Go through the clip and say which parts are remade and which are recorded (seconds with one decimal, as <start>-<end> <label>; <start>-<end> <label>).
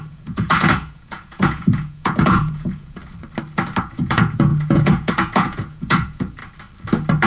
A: 0.0-3.0 remade; 3.0-3.8 recorded; 3.8-6.4 remade; 6.4-7.3 recorded